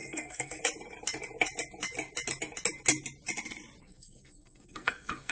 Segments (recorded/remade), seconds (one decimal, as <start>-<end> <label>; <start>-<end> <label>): 0.0-0.6 remade; 0.6-3.8 recorded; 3.8-5.3 remade